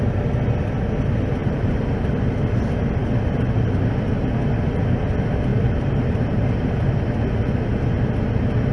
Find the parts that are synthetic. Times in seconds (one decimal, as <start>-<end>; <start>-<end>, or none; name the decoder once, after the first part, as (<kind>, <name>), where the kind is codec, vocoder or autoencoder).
1.4-2.1 (vocoder, BigVGAN v2); 5.5-6.6